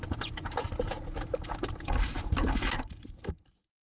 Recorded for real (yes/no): no